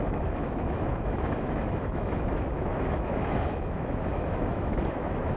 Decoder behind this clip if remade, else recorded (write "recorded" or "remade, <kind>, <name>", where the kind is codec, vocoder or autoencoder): remade, autoencoder, DAC-VAE